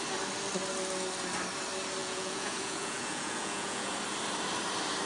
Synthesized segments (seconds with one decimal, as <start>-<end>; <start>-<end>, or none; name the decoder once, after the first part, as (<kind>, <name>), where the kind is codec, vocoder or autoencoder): 2.0-3.9 (vocoder, Vocos)